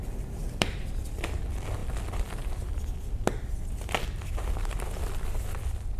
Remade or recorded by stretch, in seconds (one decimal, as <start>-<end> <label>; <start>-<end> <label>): 0.0-0.4 recorded; 0.4-1.4 remade; 1.4-6.0 recorded